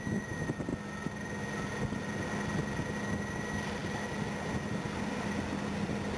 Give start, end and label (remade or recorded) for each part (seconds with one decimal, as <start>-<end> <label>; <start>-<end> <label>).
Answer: 0.0-6.2 recorded